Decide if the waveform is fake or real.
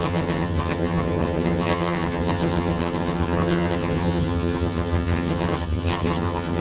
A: fake